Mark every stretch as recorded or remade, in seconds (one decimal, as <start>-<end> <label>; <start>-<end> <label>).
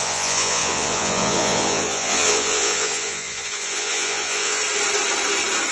0.0-4.6 remade; 4.6-5.7 recorded